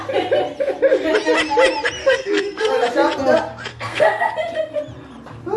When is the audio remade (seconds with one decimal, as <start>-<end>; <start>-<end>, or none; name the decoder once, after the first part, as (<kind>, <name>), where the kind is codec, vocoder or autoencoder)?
2.0-2.7 (codec, SNAC); 3.7-4.3